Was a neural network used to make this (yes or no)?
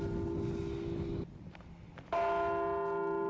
no